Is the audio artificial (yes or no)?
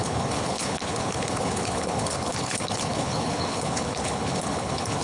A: yes